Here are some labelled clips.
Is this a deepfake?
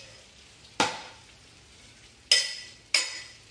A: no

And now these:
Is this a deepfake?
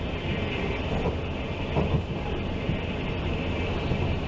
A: no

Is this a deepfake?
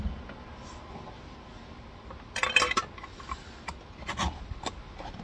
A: no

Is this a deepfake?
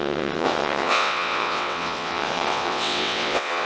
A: yes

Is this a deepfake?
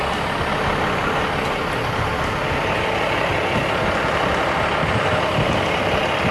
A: no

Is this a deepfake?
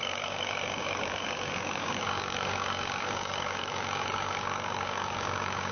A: yes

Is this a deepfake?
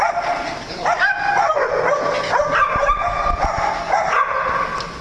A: no